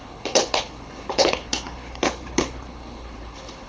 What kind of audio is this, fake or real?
fake